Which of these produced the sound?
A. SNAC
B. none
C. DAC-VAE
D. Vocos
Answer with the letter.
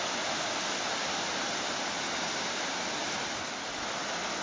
B